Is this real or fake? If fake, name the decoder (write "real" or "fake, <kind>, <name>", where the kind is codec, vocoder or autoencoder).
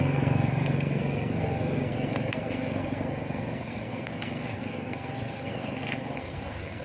fake, codec, SNAC